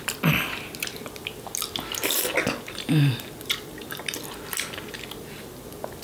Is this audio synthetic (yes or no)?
no